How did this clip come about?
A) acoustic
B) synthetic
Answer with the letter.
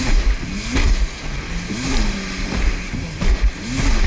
A